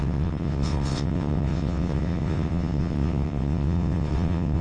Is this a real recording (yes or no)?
no